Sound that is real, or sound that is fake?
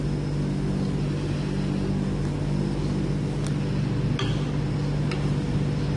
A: real